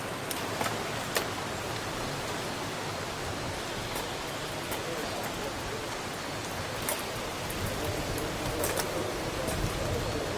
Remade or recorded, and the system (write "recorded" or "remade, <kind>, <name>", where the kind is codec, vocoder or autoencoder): recorded